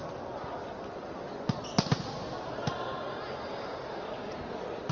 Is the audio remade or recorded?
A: recorded